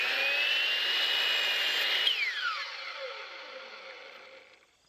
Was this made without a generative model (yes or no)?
yes